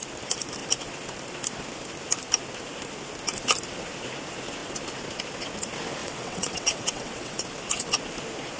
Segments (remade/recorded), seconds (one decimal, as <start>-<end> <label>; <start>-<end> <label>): 0.0-6.0 recorded; 6.0-7.4 remade; 7.4-8.6 recorded